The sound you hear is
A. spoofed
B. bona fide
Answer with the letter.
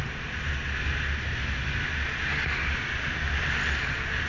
B